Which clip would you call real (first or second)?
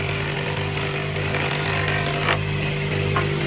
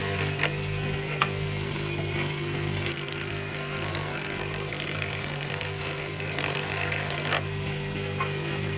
first